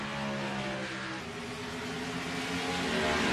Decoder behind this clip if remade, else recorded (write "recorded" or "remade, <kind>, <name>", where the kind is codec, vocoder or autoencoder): recorded